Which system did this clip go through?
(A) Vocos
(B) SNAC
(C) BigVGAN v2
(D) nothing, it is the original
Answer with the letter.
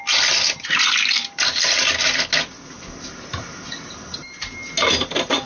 D